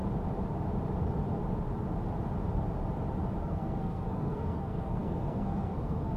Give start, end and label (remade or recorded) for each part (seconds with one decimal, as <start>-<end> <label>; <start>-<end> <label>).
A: 0.0-3.4 recorded; 3.4-6.2 remade